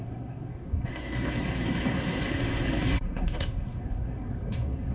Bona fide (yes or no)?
no